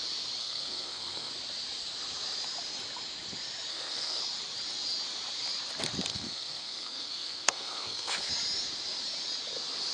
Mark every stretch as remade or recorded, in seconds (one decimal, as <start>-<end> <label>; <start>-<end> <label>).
0.0-0.4 recorded; 0.4-1.3 remade; 1.3-3.7 recorded; 3.7-4.2 remade; 4.2-6.1 recorded; 6.1-8.3 remade; 8.3-9.9 recorded